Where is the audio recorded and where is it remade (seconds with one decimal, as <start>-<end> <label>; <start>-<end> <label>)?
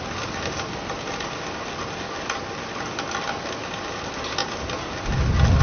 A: 0.0-5.6 recorded